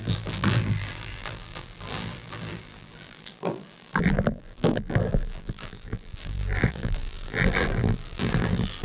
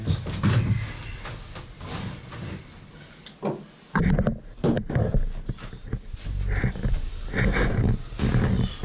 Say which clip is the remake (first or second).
first